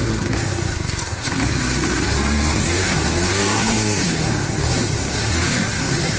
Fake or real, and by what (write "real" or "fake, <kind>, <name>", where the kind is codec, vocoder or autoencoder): fake, codec, SNAC